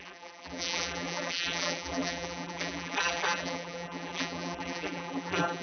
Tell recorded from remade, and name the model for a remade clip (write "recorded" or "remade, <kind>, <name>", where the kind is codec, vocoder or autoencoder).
remade, vocoder, BigVGAN v2